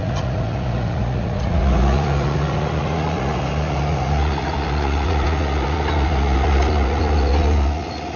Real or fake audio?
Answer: fake